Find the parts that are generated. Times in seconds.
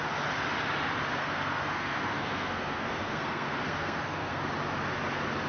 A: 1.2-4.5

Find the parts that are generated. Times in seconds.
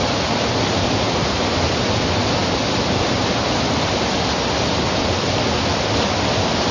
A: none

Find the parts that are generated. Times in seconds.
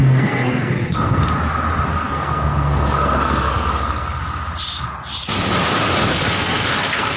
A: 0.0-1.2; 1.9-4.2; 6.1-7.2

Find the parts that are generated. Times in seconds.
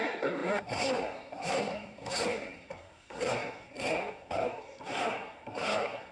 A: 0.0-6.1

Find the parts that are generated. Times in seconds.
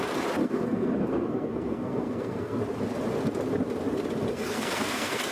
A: 0.4-2.6; 4.3-5.3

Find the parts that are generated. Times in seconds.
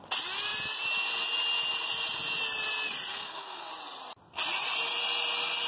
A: 3.1-3.7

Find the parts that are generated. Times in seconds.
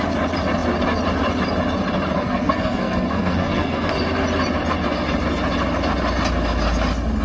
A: 2.1-3.9